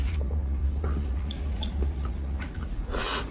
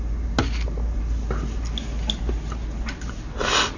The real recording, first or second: second